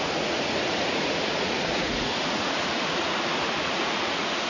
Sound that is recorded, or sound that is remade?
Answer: remade